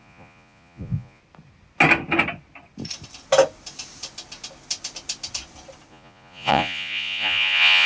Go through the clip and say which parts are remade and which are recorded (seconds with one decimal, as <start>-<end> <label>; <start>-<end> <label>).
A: 0.0-1.2 remade; 1.2-5.9 recorded; 5.9-7.9 remade